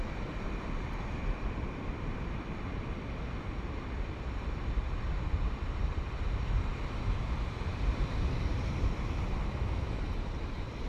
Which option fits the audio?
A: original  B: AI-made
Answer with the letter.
B